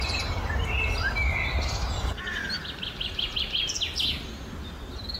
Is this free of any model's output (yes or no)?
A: yes